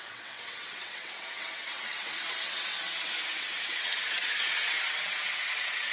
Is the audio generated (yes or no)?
yes